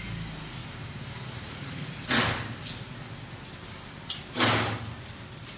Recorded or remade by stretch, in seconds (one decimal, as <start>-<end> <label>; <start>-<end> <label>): 0.0-5.6 recorded

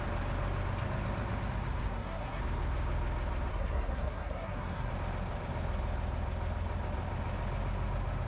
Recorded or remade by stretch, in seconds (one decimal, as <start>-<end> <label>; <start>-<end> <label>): 0.0-1.8 recorded; 1.8-2.4 remade; 2.4-3.5 recorded; 3.5-4.9 remade; 4.9-8.3 recorded

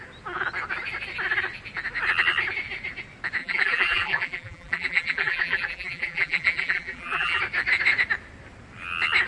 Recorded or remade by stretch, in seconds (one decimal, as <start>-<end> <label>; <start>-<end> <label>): 0.0-3.4 recorded; 3.4-7.4 remade; 7.4-9.3 recorded

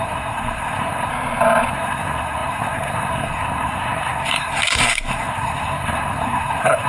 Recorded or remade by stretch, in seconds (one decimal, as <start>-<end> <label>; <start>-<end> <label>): 0.0-1.1 remade; 1.1-1.7 recorded; 1.7-6.9 remade